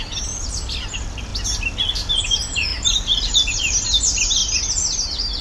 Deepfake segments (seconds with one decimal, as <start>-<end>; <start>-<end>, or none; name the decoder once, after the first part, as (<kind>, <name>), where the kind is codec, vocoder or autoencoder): 0.0-1.3 (vocoder, BigVGAN v2); 2.1-2.7; 3.6-4.4